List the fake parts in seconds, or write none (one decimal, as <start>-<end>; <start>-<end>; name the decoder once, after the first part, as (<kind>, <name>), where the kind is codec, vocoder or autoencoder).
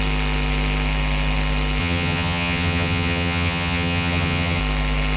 1.8-4.6 (vocoder, HiFi-GAN)